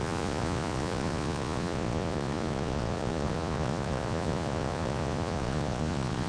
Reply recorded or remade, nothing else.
remade